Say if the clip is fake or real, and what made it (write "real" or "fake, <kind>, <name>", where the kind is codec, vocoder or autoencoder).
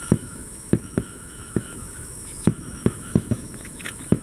fake, autoencoder, DAC-VAE